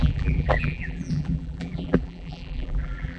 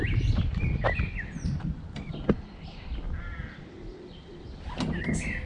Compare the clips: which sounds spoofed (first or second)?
first